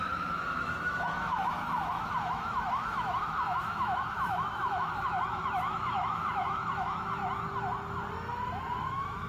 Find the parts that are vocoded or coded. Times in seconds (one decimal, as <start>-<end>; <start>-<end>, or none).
0.0-7.2; 8.8-9.3